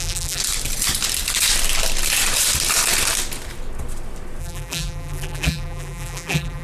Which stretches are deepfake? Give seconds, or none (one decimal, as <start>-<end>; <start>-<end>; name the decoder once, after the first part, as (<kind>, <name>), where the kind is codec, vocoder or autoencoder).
0.0-0.4 (vocoder, BigVGAN v2); 4.4-6.6